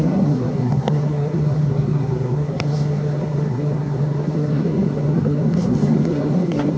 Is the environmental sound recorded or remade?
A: remade